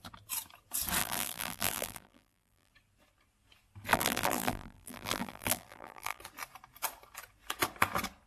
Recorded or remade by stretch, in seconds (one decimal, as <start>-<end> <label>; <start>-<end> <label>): 0.0-1.0 recorded; 1.0-2.7 remade; 2.7-3.9 recorded; 3.9-6.2 remade; 6.2-8.3 recorded